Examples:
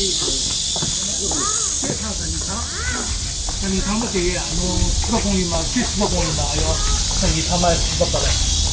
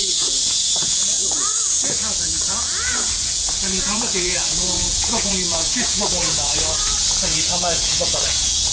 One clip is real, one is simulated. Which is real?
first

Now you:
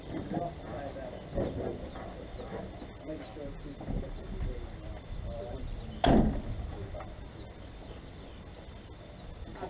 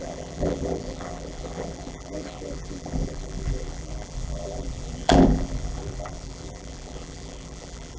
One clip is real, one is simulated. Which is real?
first